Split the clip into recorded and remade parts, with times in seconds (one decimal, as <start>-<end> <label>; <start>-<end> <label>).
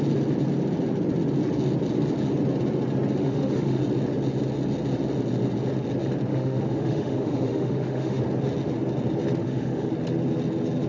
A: 0.0-3.2 recorded; 3.2-3.8 remade; 3.8-6.3 recorded; 6.3-8.2 remade; 8.2-9.4 recorded; 9.4-9.9 remade; 9.9-10.9 recorded